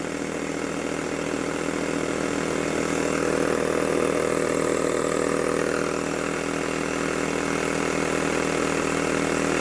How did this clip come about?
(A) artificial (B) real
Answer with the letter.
B